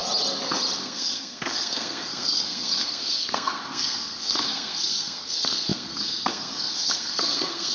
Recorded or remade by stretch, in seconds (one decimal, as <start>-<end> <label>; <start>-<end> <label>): 0.0-0.8 recorded; 0.8-7.7 remade